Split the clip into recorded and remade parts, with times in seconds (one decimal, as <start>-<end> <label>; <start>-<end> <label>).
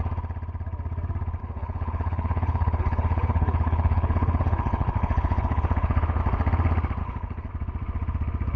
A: 0.0-1.4 recorded; 1.4-6.2 remade; 6.2-7.0 recorded; 7.0-7.5 remade; 7.5-8.6 recorded